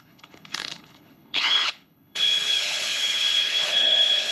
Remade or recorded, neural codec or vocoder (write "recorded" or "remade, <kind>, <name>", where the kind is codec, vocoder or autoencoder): remade, codec, HILCodec